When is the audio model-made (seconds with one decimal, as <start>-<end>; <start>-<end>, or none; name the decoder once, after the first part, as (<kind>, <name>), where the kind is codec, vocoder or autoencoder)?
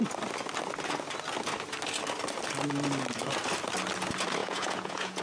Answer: 4.4-5.2 (vocoder, Vocos)